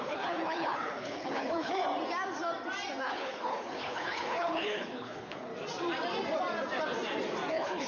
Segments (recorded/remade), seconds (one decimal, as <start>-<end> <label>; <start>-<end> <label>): 0.0-1.8 remade; 1.8-3.0 recorded; 3.0-5.5 remade; 5.5-7.5 recorded; 7.5-7.9 remade